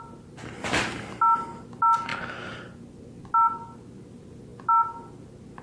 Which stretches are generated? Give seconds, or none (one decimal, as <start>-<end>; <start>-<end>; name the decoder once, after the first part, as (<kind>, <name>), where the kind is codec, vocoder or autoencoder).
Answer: none